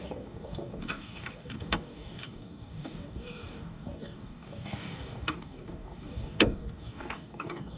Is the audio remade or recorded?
remade